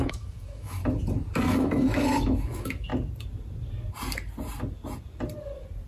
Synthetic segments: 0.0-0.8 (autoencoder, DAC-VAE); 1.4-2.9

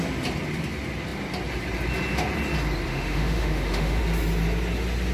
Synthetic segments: 2.9-4.0 (autoencoder, DAC-VAE)